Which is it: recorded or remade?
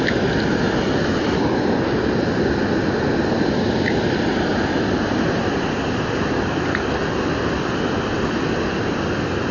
recorded